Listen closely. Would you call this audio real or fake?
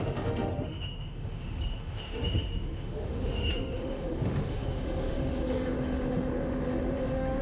fake